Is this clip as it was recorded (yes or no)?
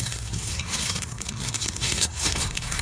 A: no